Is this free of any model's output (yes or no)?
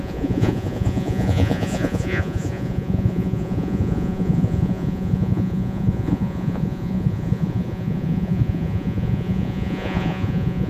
no